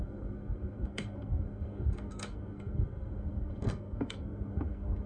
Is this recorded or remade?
remade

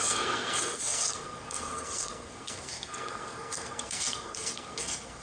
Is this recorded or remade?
remade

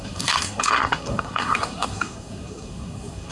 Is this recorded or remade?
remade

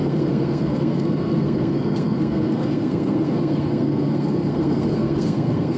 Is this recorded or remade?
remade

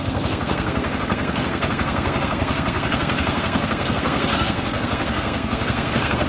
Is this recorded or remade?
remade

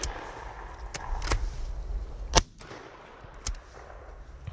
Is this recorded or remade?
recorded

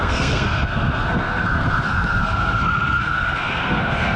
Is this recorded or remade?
remade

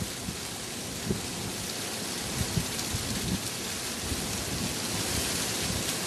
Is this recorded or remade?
recorded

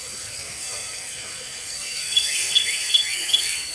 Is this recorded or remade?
remade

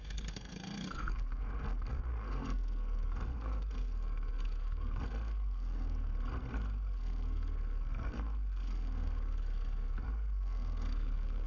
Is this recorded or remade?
remade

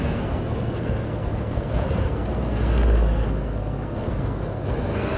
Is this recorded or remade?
remade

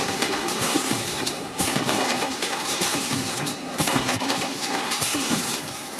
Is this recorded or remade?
remade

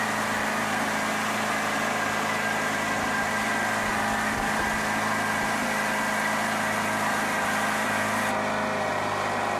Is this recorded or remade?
recorded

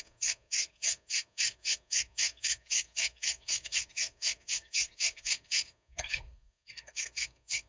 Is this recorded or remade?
remade